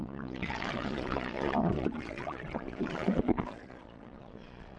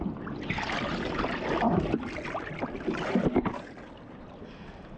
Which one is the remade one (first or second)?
first